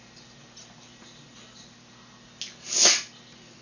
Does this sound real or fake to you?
real